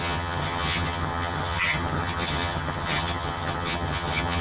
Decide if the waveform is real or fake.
fake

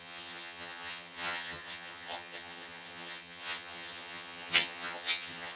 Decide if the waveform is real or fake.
fake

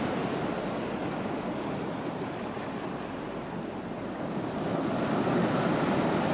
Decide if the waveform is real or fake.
real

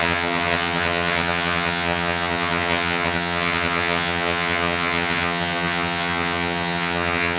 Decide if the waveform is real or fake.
fake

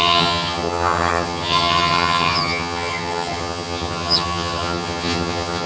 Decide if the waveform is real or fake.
fake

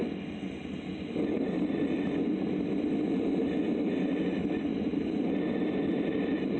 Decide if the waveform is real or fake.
real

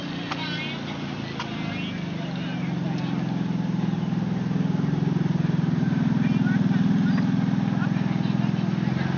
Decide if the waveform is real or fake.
real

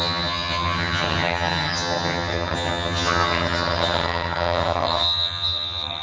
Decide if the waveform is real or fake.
fake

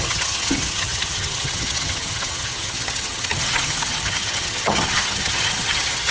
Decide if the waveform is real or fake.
fake